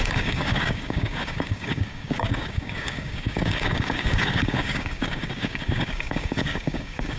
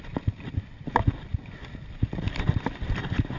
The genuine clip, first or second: second